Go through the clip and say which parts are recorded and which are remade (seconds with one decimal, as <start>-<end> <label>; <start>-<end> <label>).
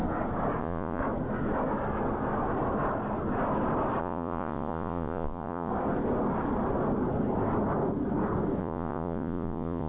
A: 0.0-0.6 recorded; 0.6-1.0 remade; 1.0-4.0 recorded; 4.0-5.7 remade; 5.7-8.6 recorded; 8.6-9.9 remade